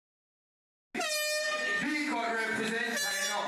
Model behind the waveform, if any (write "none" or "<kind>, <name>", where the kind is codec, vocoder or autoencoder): none